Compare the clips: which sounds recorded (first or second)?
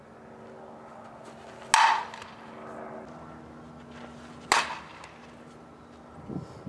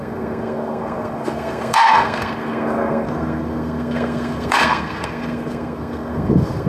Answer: first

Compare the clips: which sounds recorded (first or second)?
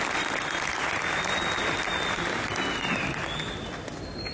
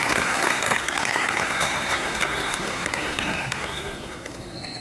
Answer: first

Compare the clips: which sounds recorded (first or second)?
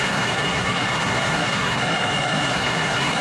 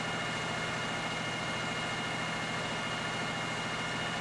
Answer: second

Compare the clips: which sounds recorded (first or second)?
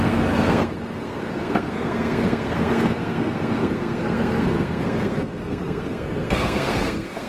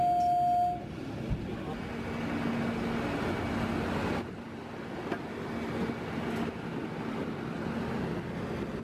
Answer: second